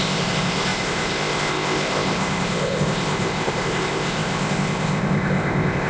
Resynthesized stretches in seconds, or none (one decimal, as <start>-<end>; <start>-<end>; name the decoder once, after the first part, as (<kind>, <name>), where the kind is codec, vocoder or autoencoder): 0.0-5.9 (codec, ZipCodec)